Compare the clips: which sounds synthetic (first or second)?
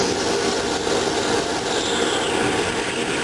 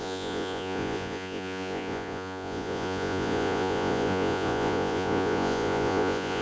second